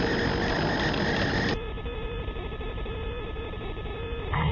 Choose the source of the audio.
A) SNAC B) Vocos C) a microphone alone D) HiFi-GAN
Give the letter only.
C